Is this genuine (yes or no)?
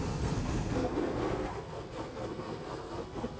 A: no